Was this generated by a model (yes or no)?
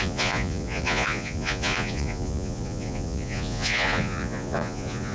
yes